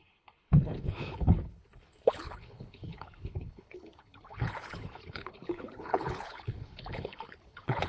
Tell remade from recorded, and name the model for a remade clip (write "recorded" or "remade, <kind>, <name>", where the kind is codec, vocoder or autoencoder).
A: remade, codec, HILCodec